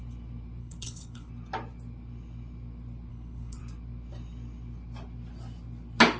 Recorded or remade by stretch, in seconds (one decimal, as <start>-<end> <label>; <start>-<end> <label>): 0.0-0.6 recorded; 0.6-1.3 remade; 1.3-3.1 recorded; 3.1-3.6 remade; 3.6-6.2 recorded

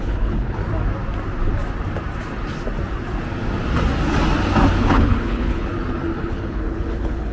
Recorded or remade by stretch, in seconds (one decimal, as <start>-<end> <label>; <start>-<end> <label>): 0.0-0.6 remade; 0.6-4.7 recorded; 4.7-5.7 remade; 5.7-6.2 recorded; 6.2-7.3 remade